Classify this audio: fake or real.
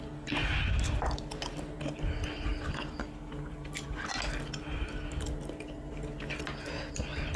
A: real